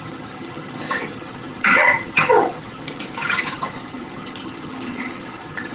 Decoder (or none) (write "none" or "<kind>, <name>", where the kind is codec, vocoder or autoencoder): vocoder, HiFi-GAN